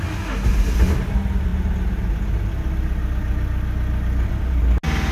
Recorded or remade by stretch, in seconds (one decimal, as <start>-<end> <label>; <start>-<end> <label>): 0.0-5.1 recorded